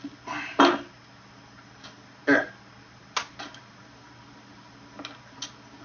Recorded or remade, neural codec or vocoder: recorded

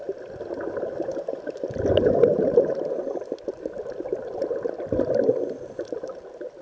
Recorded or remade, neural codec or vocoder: recorded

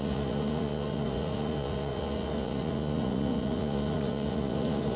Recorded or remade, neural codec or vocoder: remade, vocoder, Vocos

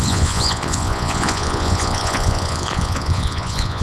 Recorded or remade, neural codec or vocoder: remade, vocoder, Vocos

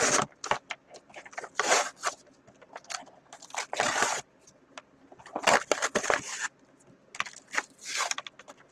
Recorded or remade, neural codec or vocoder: recorded